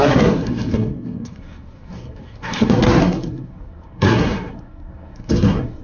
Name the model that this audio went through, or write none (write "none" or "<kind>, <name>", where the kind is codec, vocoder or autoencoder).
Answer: codec, SNAC